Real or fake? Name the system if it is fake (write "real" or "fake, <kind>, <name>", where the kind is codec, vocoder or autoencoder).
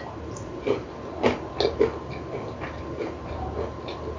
real